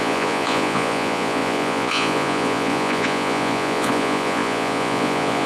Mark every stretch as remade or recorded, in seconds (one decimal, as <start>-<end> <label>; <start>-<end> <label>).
0.0-5.5 remade